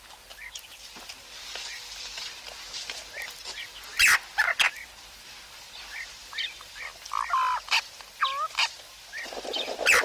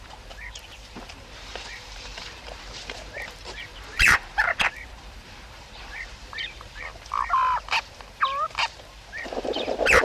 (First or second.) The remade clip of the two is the second